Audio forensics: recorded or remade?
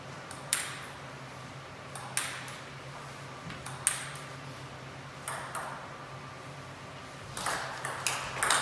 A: recorded